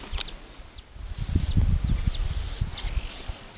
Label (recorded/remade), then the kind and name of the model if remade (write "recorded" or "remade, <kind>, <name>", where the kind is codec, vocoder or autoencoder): recorded